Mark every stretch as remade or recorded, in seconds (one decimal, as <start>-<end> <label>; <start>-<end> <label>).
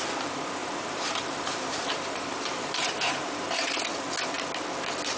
0.0-0.6 recorded; 0.6-3.7 remade; 3.7-5.2 recorded